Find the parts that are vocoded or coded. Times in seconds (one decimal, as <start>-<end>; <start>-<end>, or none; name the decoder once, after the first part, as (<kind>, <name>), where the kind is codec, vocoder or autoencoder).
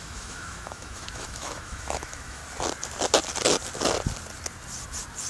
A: 0.0-2.4 (autoencoder, DAC-VAE)